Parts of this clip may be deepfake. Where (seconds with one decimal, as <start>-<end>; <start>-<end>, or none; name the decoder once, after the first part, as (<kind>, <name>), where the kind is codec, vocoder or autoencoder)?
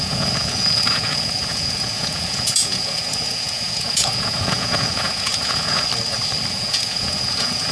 0.0-5.9 (vocoder, Vocos); 6.5-7.7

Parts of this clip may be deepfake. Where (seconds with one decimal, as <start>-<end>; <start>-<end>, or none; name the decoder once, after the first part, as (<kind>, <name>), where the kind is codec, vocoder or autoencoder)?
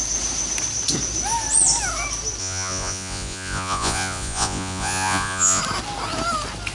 2.4-5.6 (vocoder, Vocos)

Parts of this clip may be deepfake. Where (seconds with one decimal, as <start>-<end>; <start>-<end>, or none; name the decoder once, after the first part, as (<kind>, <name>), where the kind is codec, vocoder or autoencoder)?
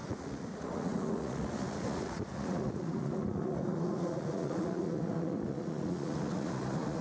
0.0-7.0 (vocoder, Vocos)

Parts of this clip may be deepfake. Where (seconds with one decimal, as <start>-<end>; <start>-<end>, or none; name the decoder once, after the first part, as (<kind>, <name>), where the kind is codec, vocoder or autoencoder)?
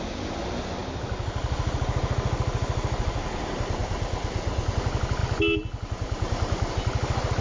none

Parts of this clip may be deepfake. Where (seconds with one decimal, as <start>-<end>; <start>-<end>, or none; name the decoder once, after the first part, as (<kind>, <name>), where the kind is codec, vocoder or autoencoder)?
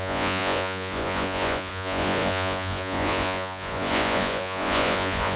0.0-5.4 (vocoder, Vocos)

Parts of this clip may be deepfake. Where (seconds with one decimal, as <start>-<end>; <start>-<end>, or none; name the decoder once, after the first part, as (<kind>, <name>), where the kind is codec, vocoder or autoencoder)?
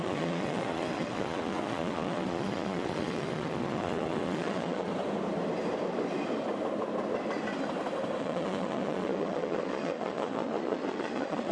0.0-4.9 (vocoder, Vocos); 8.2-11.5